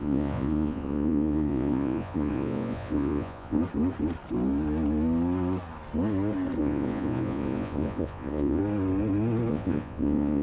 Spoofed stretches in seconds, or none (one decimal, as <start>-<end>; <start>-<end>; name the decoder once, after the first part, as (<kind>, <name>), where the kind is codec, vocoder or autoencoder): 0.0-3.6 (vocoder, Vocos); 6.6-8.6; 9.5-10.4